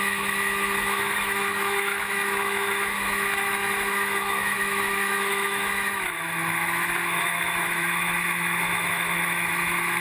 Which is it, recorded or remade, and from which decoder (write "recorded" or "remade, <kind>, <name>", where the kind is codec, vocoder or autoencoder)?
remade, autoencoder, DAC-VAE